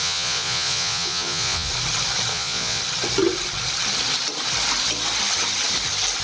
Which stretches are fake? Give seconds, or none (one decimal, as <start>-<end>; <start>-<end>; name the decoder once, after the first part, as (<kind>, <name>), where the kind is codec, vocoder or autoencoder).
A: 0.0-1.7 (vocoder, Vocos); 2.3-2.8